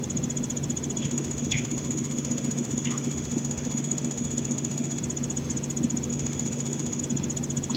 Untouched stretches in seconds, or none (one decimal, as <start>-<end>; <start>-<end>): 0.0-1.0; 5.0-6.1; 7.0-7.8